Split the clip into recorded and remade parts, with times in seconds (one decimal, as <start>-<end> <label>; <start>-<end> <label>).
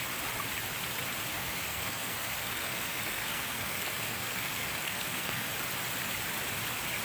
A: 0.0-1.3 recorded; 1.3-5.5 remade; 5.5-7.0 recorded